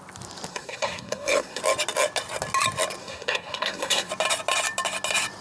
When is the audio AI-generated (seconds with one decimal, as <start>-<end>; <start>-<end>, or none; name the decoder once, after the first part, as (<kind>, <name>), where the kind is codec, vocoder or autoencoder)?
0.5-1.6 (codec, SNAC); 3.0-4.1